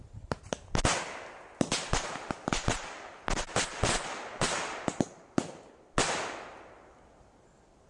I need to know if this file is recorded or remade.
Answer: recorded